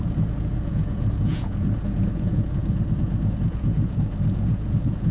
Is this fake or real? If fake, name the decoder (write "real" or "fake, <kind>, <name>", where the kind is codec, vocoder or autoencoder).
fake, vocoder, Vocos